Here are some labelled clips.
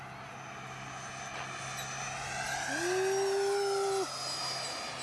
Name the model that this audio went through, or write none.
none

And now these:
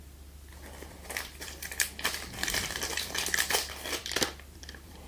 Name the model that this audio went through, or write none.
vocoder, BigVGAN v2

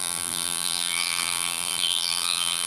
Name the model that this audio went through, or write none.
vocoder, BigVGAN v2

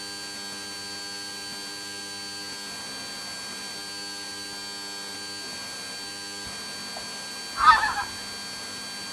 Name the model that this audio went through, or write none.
none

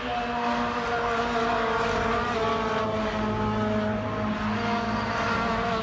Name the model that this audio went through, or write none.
none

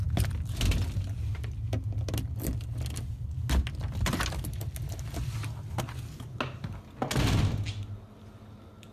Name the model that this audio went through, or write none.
none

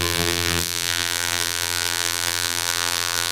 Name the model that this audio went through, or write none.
vocoder, BigVGAN v2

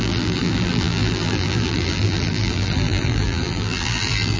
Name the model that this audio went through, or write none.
vocoder, BigVGAN v2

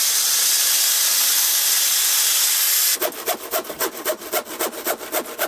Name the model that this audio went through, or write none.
none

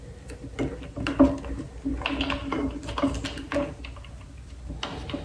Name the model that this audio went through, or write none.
none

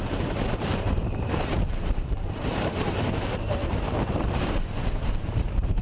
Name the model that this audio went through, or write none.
vocoder, BigVGAN v2